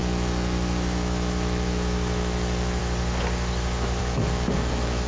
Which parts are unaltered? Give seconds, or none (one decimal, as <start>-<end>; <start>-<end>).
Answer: 2.8-4.0